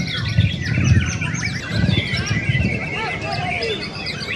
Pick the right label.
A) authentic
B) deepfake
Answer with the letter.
A